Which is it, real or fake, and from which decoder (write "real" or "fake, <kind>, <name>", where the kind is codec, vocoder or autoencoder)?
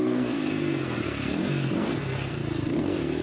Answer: fake, codec, SNAC